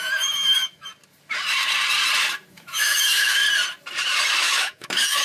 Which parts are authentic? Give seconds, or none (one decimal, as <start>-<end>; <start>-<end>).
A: 0.9-2.5; 3.4-4.4